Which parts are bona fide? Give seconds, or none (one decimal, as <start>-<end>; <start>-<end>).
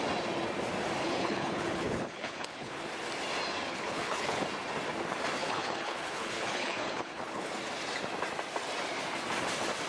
0.0-1.0; 2.8-3.7; 4.4-5.4; 7.5-9.9